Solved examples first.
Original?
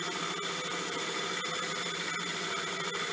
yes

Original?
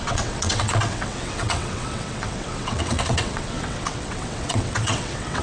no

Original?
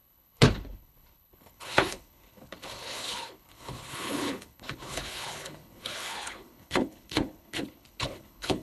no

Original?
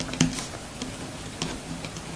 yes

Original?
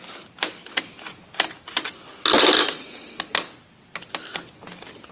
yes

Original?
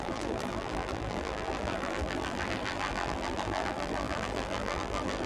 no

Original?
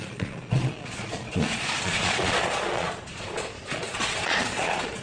no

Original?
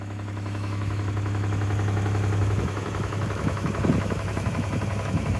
no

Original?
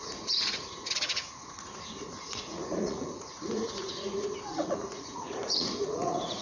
no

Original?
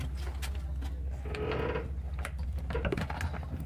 yes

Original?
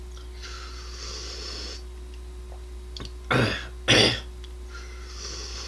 yes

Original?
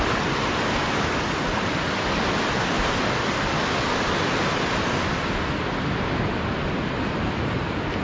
yes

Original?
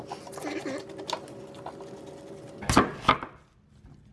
yes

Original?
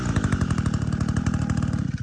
yes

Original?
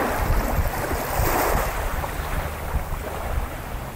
yes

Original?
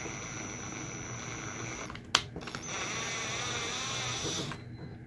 yes